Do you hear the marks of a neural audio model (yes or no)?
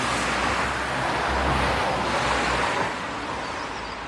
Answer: no